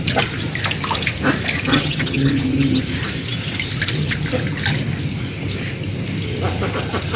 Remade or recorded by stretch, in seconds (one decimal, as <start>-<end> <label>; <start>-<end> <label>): 0.0-1.7 recorded; 1.7-2.8 remade; 2.8-7.2 recorded